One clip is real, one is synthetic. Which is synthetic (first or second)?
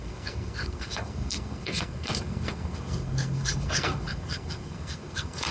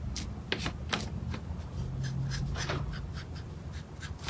first